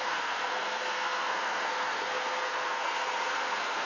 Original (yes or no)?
no